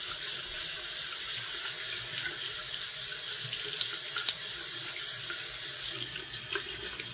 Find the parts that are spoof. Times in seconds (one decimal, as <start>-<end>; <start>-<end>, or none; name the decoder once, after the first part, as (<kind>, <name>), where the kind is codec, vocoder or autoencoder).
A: none

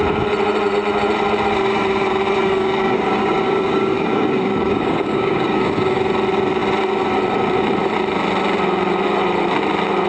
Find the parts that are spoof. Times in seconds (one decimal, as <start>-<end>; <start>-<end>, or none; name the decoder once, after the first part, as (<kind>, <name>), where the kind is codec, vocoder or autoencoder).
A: 2.4-6.0 (codec, DAC)

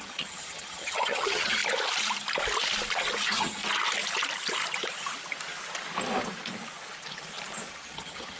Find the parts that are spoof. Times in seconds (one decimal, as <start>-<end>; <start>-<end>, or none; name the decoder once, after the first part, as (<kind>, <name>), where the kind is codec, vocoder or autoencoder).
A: 0.0-1.6 (vocoder, HiFi-GAN); 3.2-3.6; 7.7-8.4

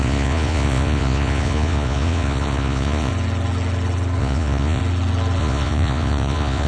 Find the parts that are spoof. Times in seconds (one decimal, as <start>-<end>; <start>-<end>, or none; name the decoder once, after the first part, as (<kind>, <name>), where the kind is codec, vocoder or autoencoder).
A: 0.0-3.1 (vocoder, Vocos); 4.2-4.8; 5.4-6.7

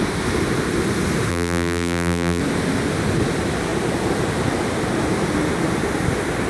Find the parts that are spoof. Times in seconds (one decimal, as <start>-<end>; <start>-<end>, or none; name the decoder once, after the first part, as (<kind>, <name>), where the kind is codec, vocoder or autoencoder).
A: 1.3-2.4 (vocoder, BigVGAN v2)

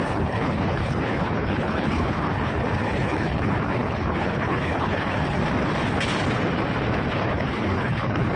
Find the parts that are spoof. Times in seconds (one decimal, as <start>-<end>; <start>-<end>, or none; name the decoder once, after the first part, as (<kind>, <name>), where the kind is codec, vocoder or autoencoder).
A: 0.0-5.4 (codec, HILCodec); 7.1-8.4